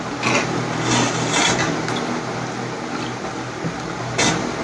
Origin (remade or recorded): recorded